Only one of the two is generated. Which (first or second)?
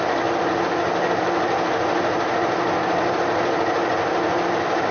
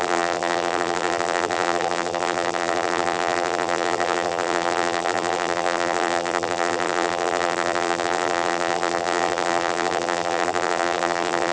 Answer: second